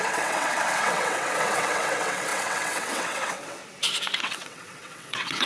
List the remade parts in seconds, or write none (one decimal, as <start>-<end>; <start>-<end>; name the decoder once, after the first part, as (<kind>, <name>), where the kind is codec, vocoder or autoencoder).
0.0-3.6 (vocoder, WaveNeXt); 4.2-5.5